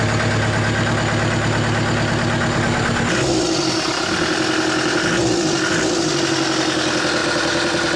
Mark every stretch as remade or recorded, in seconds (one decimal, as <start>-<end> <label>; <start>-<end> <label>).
0.0-7.2 recorded; 7.2-8.0 remade